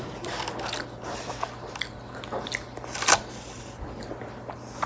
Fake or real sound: real